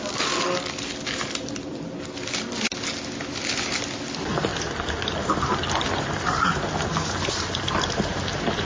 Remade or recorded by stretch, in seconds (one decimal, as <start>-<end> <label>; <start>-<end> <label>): 0.0-8.7 recorded